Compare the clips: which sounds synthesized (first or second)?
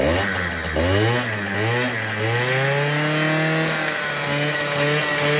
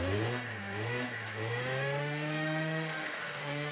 second